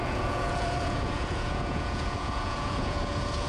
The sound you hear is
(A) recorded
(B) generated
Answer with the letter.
B